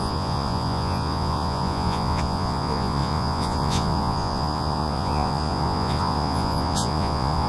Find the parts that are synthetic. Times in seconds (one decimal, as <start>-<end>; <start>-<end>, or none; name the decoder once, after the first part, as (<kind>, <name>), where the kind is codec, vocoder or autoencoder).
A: 0.0-7.5 (vocoder, Vocos)